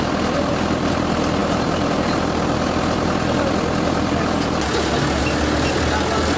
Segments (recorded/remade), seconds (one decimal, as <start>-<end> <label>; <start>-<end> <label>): 0.0-6.4 recorded